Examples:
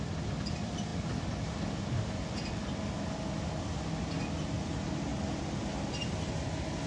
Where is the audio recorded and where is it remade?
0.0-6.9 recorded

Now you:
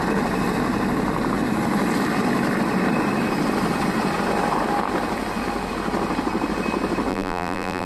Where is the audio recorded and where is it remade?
0.0-7.1 recorded; 7.1-7.9 remade

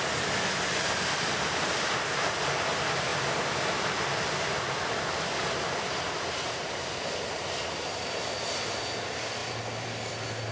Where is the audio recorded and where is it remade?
0.0-3.1 recorded; 3.1-4.2 remade; 4.2-9.4 recorded; 9.4-10.1 remade; 10.1-10.5 recorded

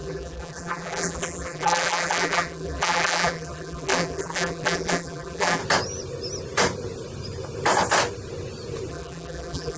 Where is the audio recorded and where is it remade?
0.0-5.6 remade; 5.6-8.9 recorded; 8.9-9.8 remade

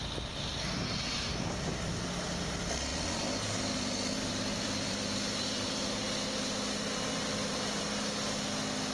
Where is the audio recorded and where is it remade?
0.0-2.9 recorded; 2.9-5.7 remade; 5.7-7.1 recorded; 7.1-7.8 remade; 7.8-8.9 recorded

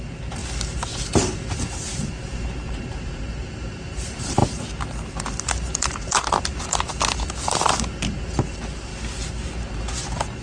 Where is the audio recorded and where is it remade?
0.0-4.4 remade; 4.4-5.4 recorded; 5.4-8.9 remade; 8.9-10.4 recorded

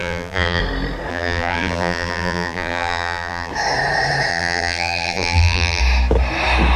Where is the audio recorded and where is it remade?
0.0-0.6 remade; 0.6-1.1 recorded; 1.1-3.5 remade; 3.5-4.3 recorded; 4.3-5.8 remade; 5.8-6.8 recorded